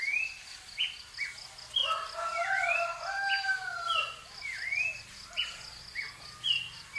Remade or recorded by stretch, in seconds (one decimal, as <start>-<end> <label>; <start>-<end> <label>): 0.0-7.0 recorded